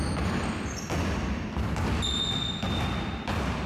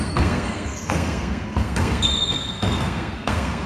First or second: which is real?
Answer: first